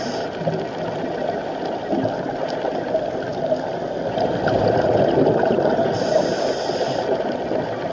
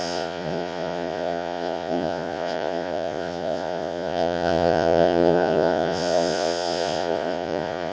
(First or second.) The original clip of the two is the first